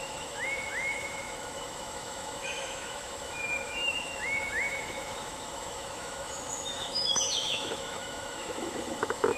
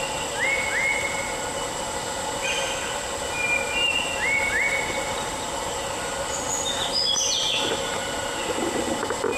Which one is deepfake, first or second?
first